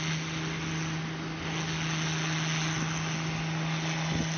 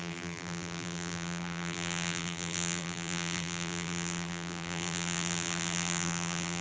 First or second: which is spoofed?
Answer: second